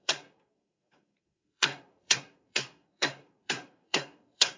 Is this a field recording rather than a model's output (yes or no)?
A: no